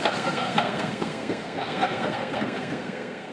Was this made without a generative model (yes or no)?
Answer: no